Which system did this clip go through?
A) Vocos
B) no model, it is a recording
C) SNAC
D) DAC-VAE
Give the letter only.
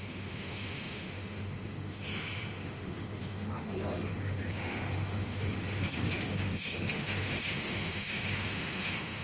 D